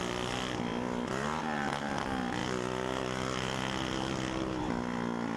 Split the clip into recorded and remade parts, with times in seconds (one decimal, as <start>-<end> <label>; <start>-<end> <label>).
0.0-5.4 recorded